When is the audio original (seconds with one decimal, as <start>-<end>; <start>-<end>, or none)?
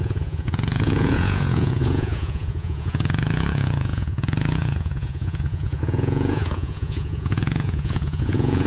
none